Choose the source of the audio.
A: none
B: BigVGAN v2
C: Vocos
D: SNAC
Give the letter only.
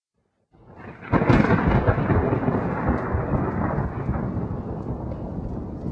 A